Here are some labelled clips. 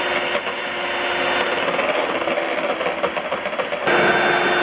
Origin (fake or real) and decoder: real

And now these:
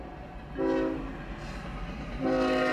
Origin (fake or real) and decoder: real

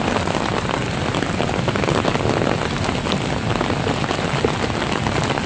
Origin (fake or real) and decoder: real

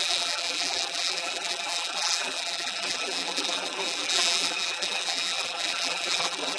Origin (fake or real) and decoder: fake, vocoder, BigVGAN v2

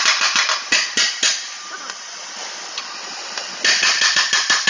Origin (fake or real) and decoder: fake, vocoder, BigVGAN v2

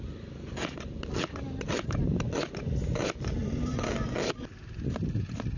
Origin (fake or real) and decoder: real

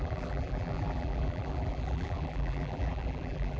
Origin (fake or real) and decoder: fake, vocoder, BigVGAN v2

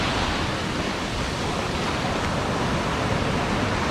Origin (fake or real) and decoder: real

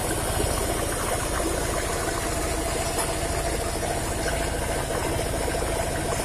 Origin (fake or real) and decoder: real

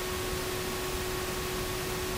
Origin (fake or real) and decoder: real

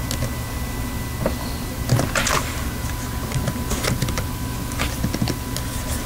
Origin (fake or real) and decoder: real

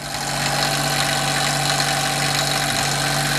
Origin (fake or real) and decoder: real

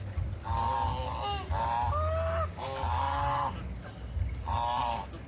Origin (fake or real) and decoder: real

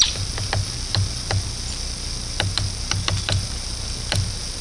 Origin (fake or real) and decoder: real